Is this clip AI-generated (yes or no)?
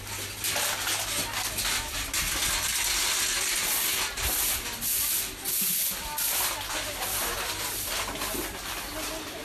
no